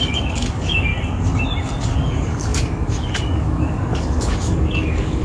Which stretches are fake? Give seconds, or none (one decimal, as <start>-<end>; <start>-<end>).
0.0-0.9; 1.6-5.2